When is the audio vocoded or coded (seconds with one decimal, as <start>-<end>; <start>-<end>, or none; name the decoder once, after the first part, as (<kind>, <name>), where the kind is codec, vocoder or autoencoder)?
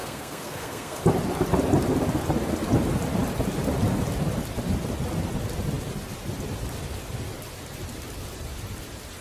0.0-1.0 (codec, SNAC)